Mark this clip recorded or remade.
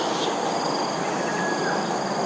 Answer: recorded